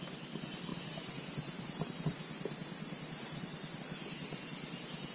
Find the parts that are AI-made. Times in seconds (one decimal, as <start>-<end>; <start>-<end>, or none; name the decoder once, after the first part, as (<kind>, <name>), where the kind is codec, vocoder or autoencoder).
0.7-3.8 (vocoder, BigVGAN v2)